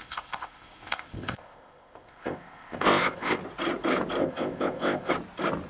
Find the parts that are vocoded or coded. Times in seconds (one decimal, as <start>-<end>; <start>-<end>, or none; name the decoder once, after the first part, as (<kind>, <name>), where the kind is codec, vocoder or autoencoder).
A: 0.0-3.4 (codec, ZipCodec); 4.2-5.1